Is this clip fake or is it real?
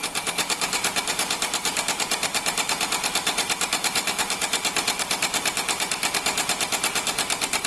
fake